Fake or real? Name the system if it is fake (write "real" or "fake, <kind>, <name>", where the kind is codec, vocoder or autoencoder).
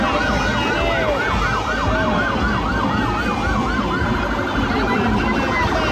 real